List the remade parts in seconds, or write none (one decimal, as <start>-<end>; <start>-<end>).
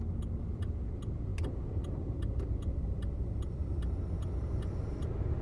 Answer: none